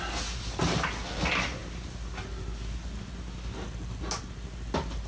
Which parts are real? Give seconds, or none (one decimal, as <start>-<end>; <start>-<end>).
0.0-5.1